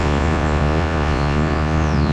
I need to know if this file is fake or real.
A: fake